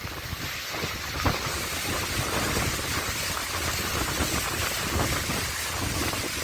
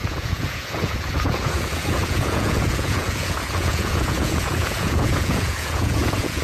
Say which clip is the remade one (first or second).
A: second